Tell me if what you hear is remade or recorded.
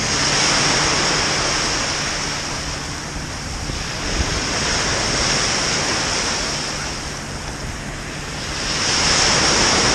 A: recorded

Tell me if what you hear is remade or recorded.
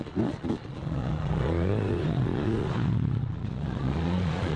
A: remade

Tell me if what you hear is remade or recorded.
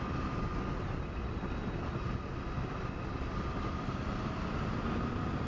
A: recorded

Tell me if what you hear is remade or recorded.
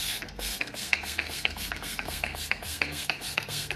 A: remade